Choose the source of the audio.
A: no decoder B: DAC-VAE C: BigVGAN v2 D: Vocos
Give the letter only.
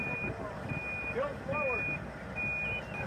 A